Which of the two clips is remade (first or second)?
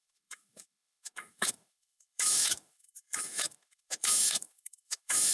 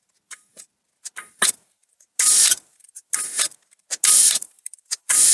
first